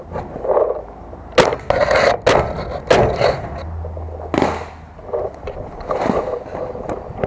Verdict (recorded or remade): recorded